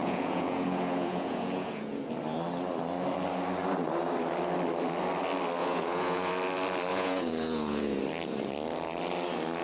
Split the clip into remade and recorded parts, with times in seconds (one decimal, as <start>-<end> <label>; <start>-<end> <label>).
0.0-2.1 remade; 2.1-5.6 recorded; 5.6-6.3 remade; 6.3-6.9 recorded; 6.9-8.0 remade; 8.0-9.6 recorded